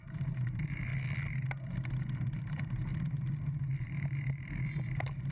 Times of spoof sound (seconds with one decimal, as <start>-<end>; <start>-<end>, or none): 0.0-0.9; 2.4-2.9; 3.5-5.3